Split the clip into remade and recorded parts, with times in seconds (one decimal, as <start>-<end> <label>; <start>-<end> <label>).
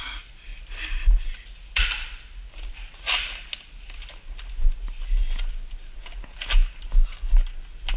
0.0-8.0 recorded